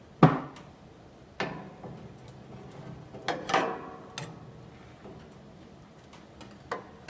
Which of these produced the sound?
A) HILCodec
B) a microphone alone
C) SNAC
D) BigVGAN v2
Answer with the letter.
B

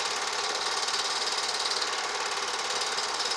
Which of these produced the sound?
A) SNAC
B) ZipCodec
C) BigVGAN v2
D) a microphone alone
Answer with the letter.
D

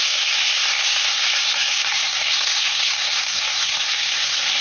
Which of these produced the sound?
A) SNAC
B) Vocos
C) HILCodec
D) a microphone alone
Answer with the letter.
A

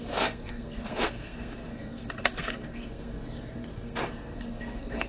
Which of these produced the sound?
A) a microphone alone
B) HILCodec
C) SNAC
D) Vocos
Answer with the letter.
C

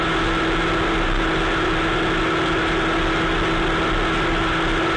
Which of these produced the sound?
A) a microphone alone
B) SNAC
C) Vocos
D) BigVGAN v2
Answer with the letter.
A